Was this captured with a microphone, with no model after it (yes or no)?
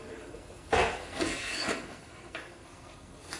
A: no